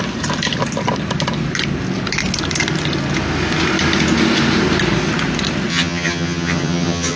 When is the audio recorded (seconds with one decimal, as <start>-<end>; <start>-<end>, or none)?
0.0-5.7